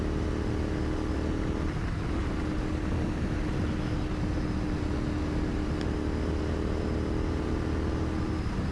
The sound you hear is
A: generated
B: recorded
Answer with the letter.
B